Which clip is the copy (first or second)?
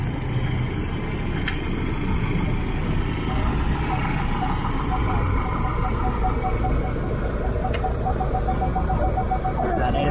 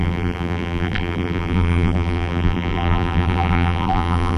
second